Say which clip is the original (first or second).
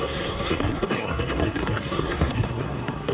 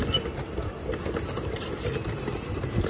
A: second